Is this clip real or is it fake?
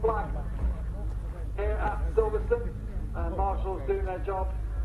real